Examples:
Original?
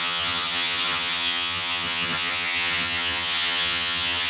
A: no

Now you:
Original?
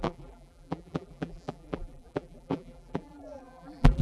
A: no